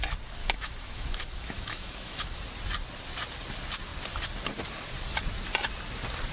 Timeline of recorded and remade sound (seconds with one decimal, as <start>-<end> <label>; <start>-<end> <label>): 0.0-0.4 recorded; 0.4-2.4 remade; 2.4-6.3 recorded